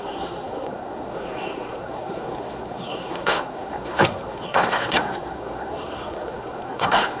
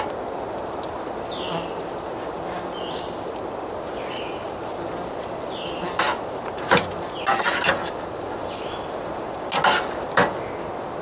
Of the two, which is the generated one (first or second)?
first